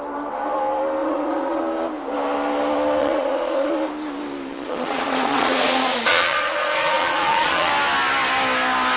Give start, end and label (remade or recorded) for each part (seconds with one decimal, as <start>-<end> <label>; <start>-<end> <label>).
0.0-1.0 recorded; 1.0-1.6 remade; 1.6-3.0 recorded; 3.0-3.7 remade; 3.7-4.5 recorded; 4.5-7.7 remade; 7.7-9.0 recorded